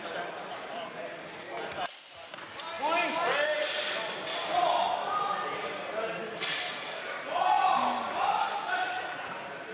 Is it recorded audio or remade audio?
recorded